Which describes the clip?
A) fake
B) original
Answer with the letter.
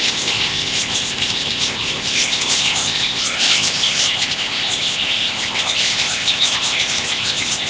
A